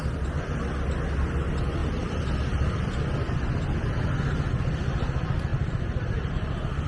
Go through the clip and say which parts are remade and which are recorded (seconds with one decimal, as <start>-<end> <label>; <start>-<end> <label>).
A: 0.0-1.8 recorded; 1.8-2.8 remade; 2.8-5.5 recorded; 5.5-6.3 remade; 6.3-6.9 recorded